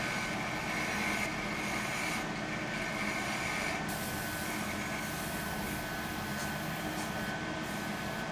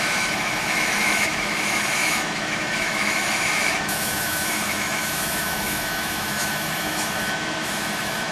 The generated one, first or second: second